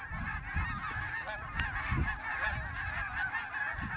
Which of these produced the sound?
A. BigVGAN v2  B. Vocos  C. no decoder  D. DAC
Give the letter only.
C